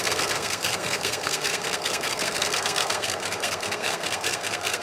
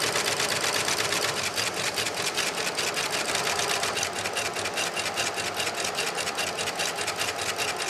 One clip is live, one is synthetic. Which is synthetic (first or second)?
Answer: first